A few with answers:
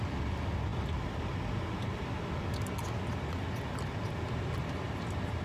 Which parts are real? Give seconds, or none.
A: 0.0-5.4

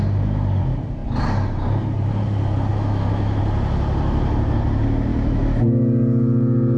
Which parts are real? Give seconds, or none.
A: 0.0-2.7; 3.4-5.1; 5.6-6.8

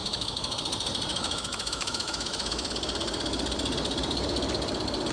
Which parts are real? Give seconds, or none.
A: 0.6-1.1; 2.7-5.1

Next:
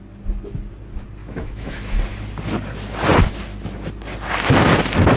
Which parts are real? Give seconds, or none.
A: 0.0-1.2; 2.0-5.2

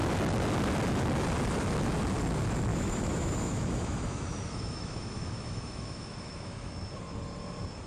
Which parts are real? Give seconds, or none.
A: 0.0-2.7; 6.7-7.9